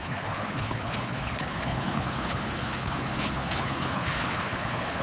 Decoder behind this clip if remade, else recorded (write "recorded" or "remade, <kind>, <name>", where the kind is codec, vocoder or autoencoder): remade, codec, HILCodec